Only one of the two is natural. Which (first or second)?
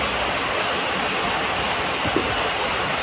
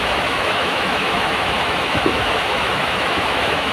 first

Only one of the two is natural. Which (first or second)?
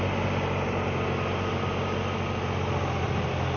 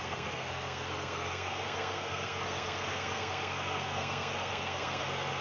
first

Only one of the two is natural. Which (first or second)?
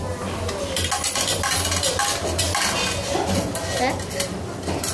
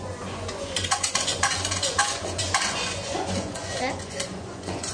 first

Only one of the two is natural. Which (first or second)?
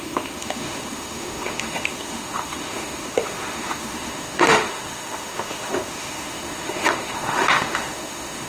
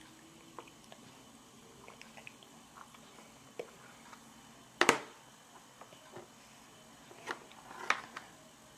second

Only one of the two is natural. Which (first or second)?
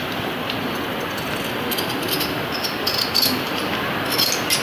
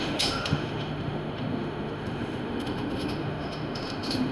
first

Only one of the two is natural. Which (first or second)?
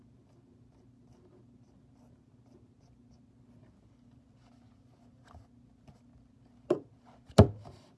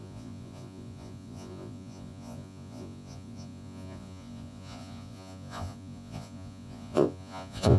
first